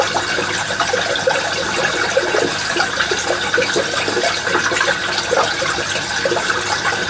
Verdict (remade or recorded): recorded